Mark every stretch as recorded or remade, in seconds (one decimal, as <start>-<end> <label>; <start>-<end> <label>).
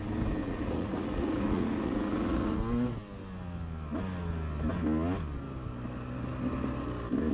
0.0-0.4 recorded; 0.4-2.6 remade; 2.6-7.3 recorded